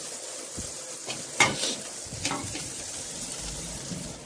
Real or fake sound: real